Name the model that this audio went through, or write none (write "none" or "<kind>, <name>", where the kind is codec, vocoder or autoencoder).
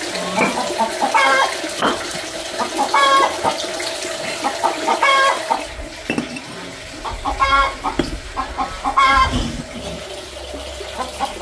none